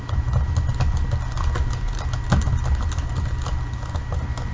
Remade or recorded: recorded